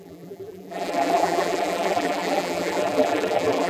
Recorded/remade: remade